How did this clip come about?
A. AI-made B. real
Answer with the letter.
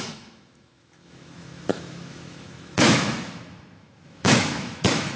A